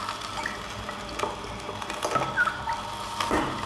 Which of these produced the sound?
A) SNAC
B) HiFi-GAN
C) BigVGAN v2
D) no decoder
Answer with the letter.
D